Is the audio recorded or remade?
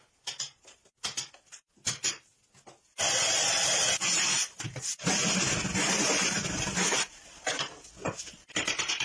recorded